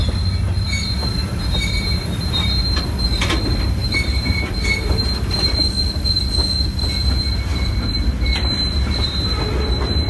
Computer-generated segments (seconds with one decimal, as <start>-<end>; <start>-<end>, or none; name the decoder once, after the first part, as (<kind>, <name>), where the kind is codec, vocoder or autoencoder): 1.0-2.8 (vocoder, BigVGAN v2); 3.8-4.5